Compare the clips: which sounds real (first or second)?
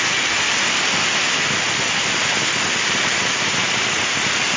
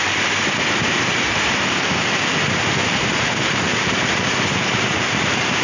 first